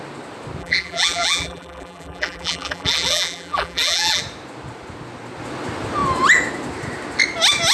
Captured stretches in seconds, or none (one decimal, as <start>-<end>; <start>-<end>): 0.0-0.6; 4.2-7.7